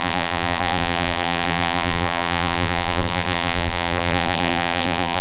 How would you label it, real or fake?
fake